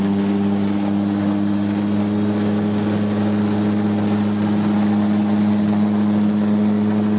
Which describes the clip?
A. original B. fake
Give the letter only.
A